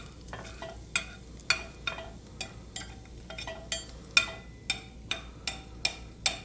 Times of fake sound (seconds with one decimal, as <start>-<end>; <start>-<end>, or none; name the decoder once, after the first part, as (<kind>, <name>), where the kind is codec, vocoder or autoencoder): none